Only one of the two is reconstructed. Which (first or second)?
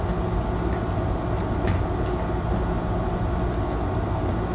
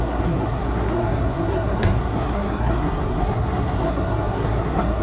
second